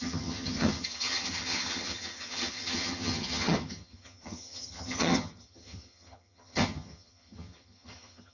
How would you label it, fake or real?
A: fake